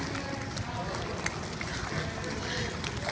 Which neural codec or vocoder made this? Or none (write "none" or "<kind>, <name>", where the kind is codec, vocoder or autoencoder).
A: none